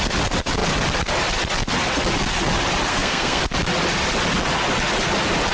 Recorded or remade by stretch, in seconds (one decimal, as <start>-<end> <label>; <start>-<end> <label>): 0.0-2.9 recorded; 2.9-3.4 remade; 3.4-5.5 recorded